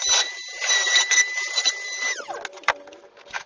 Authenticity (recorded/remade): recorded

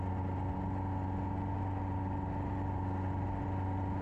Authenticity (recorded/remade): recorded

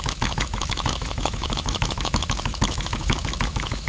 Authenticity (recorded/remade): remade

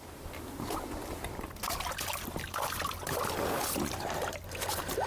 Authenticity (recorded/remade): recorded